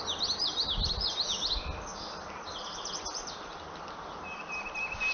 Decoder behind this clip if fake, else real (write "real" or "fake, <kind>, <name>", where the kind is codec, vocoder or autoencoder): real